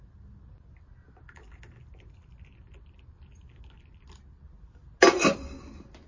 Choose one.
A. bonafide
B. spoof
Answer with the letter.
A